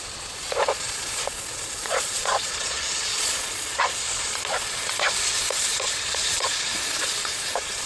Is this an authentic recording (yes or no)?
no